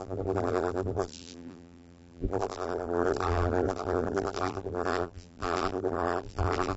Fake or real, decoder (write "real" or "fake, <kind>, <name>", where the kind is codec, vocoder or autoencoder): fake, vocoder, BigVGAN v2